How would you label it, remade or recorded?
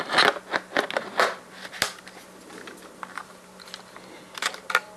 recorded